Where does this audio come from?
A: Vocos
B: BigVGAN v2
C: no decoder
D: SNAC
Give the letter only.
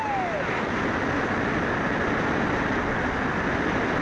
C